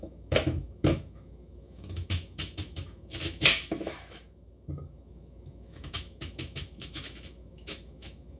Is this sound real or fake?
fake